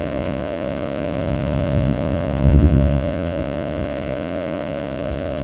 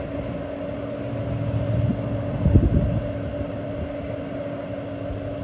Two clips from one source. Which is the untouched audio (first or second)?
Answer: second